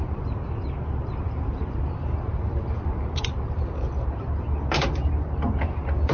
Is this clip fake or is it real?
fake